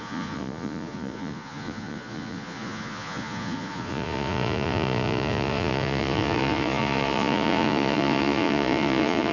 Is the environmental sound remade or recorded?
remade